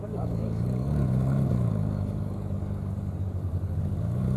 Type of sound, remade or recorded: remade